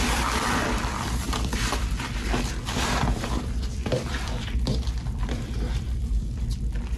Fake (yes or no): yes